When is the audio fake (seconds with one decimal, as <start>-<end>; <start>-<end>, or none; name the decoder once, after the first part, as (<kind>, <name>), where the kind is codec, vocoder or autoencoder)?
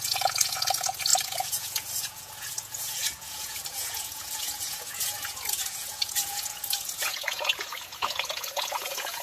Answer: 0.0-9.2 (vocoder, Vocos)